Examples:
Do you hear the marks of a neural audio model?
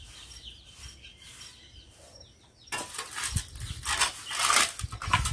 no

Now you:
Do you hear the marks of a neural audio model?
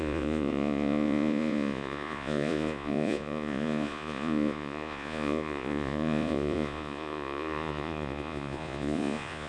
yes